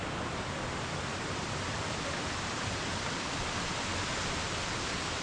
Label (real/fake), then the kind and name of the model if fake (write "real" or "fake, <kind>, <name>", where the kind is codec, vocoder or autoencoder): fake, vocoder, BigVGAN v2